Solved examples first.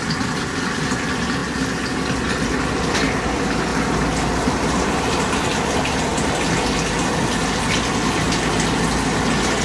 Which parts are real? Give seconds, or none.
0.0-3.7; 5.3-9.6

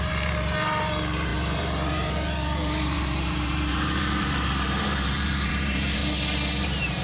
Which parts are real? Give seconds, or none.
6.0-6.6

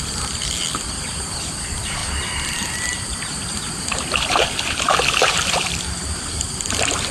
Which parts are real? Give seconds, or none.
2.0-3.0

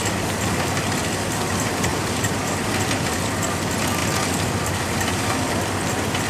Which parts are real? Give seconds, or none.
0.0-1.9; 2.6-6.3

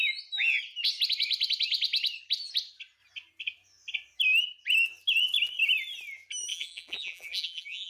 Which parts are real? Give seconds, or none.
0.0-6.5

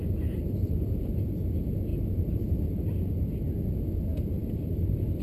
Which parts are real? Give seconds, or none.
0.0-1.9; 2.6-4.4